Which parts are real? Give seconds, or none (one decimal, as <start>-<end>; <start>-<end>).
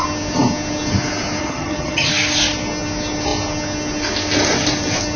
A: 0.0-1.4; 2.1-5.2